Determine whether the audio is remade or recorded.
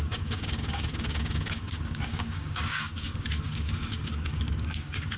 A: remade